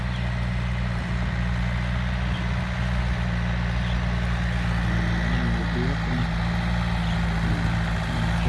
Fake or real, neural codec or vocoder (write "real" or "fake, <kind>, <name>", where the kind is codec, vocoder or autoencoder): real